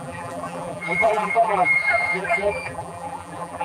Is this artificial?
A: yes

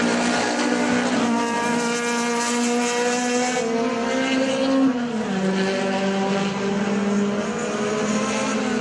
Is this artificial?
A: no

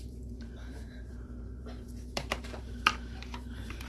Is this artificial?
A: yes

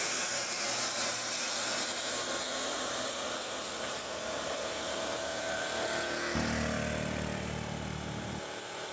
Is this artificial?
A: no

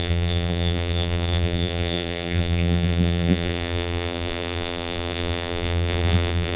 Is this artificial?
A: yes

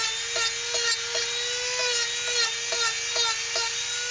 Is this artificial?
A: no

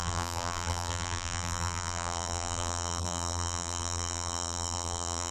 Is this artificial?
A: yes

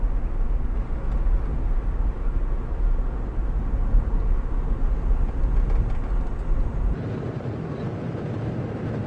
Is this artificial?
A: no